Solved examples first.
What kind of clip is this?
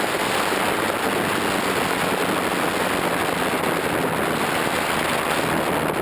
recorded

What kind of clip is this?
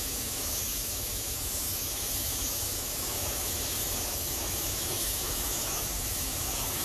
remade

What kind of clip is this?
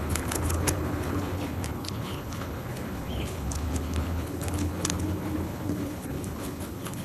remade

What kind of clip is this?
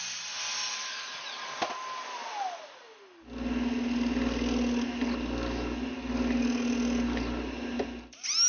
recorded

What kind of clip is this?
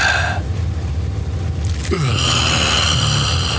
recorded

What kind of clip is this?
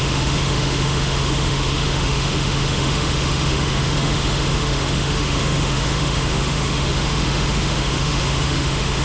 remade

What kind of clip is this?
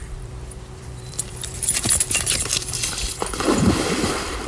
remade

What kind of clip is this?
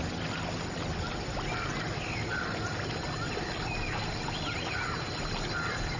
recorded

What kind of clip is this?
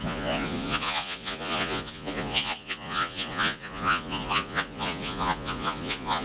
remade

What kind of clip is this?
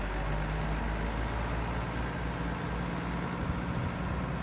recorded